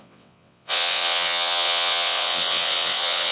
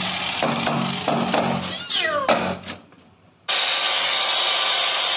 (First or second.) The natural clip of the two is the second